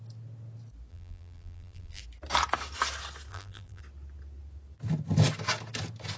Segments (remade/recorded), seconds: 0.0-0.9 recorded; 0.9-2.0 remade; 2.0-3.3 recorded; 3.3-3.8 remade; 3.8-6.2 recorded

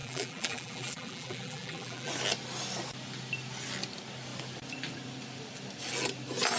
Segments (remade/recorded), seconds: 0.0-2.1 remade; 2.1-6.6 recorded

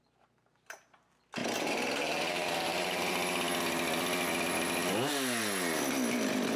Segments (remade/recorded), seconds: 0.0-1.4 recorded; 1.4-3.1 remade; 3.1-6.6 recorded

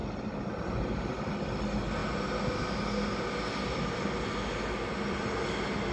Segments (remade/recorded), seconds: 0.0-0.8 remade; 0.8-5.9 recorded

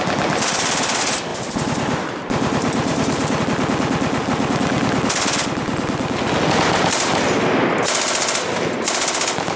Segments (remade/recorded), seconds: 0.0-1.3 recorded; 1.3-3.4 remade; 3.4-9.6 recorded

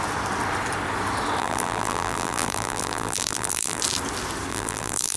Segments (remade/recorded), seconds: 0.0-1.4 recorded; 1.4-3.8 remade; 3.8-4.5 recorded; 4.5-5.2 remade

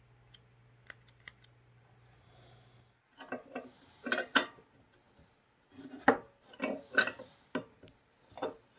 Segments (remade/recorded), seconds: 0.0-8.8 recorded

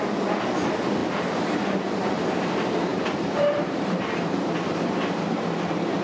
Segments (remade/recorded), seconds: 0.0-1.0 recorded; 1.0-1.6 remade; 1.6-2.9 recorded; 2.9-4.8 remade; 4.8-6.0 recorded